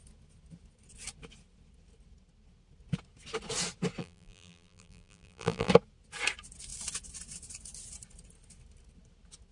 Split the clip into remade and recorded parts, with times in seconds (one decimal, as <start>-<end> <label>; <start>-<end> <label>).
0.0-4.0 recorded; 4.0-5.7 remade; 5.7-9.5 recorded